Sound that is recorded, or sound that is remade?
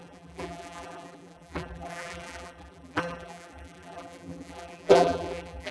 remade